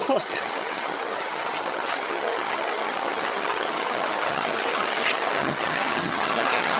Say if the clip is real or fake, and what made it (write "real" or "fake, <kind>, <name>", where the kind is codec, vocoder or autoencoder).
fake, vocoder, HiFi-GAN